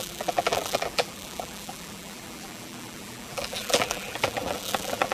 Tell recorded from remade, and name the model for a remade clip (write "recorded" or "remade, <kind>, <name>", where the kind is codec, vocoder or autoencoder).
remade, vocoder, BigVGAN v2